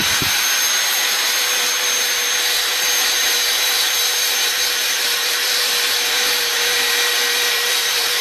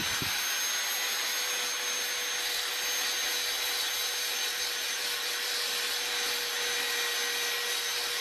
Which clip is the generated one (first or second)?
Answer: first